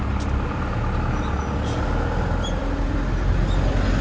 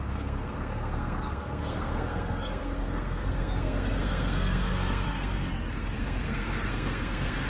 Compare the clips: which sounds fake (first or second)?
second